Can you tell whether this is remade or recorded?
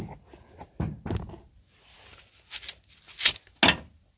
recorded